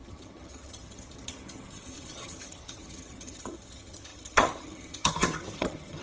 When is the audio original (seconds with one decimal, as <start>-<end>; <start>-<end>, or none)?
none